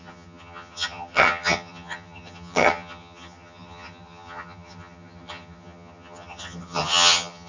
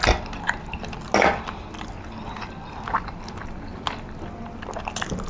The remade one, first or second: first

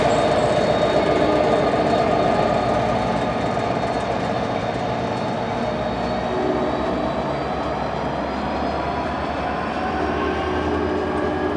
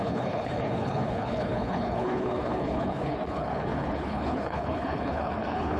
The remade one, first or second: second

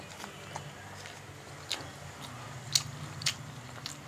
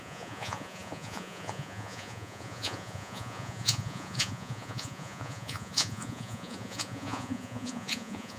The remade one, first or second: second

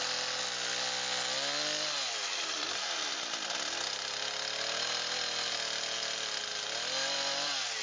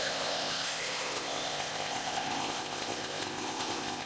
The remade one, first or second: second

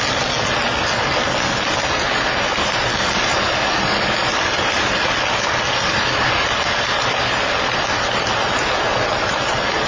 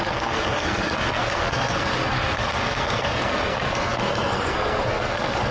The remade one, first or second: second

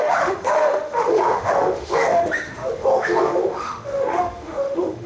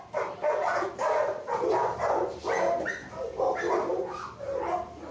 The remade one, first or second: first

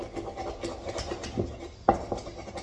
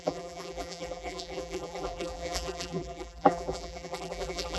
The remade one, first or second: second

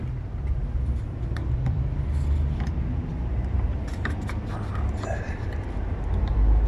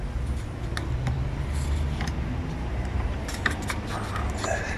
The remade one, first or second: first